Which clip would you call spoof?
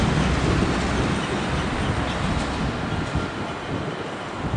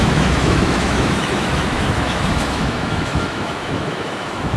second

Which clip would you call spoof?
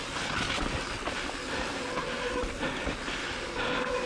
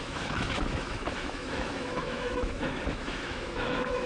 second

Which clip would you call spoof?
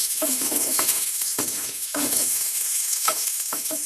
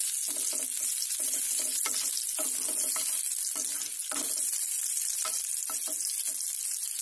first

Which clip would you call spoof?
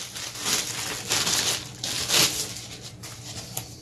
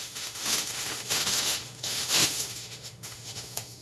second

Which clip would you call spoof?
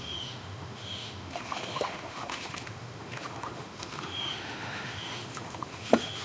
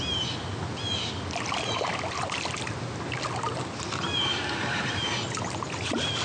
first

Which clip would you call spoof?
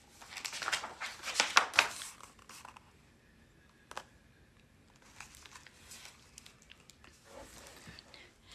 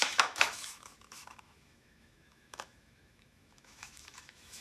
second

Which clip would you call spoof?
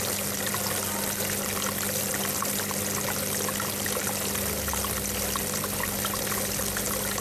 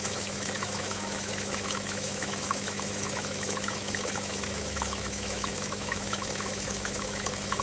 second